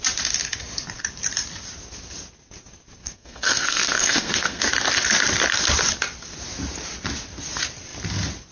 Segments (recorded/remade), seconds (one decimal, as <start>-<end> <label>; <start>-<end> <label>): 0.0-3.0 recorded; 3.0-4.6 remade; 4.6-8.5 recorded